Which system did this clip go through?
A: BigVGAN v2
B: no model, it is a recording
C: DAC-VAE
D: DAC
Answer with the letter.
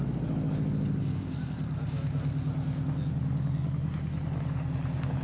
B